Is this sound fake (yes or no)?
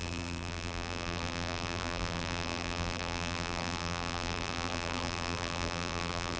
yes